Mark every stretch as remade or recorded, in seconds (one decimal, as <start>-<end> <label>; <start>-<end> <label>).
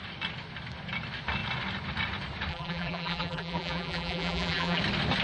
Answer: 0.0-2.5 recorded; 2.5-4.8 remade; 4.8-5.2 recorded